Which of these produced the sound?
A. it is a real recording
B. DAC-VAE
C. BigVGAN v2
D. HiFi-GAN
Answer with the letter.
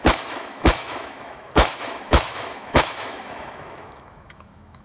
B